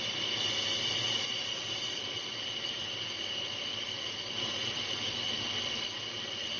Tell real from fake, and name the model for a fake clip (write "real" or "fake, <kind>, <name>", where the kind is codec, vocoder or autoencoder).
real